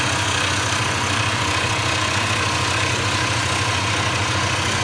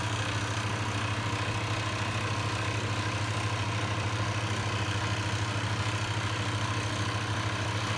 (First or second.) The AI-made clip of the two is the first